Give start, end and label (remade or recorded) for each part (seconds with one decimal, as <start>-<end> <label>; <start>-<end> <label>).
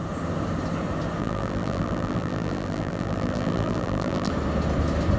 0.0-1.2 recorded; 1.2-4.3 remade; 4.3-5.2 recorded